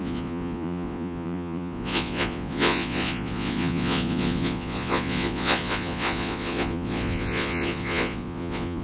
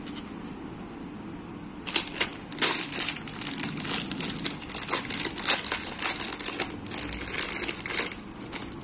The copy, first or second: first